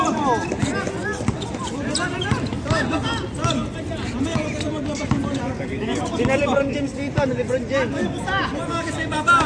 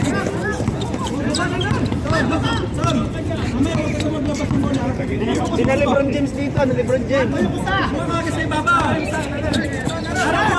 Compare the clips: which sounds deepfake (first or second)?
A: second